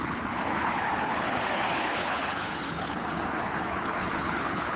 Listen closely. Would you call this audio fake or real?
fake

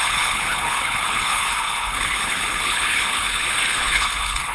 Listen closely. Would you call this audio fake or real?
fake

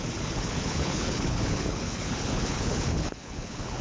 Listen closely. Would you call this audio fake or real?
fake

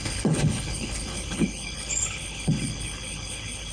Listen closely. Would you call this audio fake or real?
fake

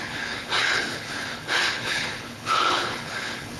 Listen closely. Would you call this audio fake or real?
fake